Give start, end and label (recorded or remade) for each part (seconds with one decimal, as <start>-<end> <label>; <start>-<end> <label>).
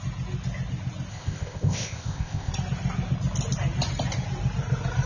0.0-1.1 recorded; 1.1-2.5 remade; 2.5-5.1 recorded